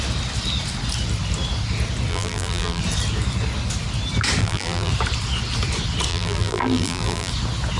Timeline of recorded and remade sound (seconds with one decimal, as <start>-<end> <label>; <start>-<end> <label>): 0.0-2.1 recorded; 2.1-2.8 remade; 2.8-4.4 recorded; 4.4-4.9 remade; 4.9-6.1 recorded; 6.1-7.3 remade; 7.3-7.8 recorded